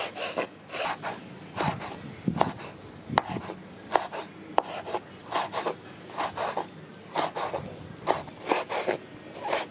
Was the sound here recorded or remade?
recorded